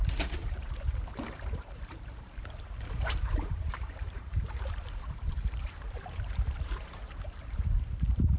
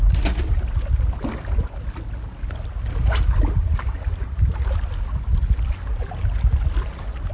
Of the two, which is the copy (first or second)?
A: first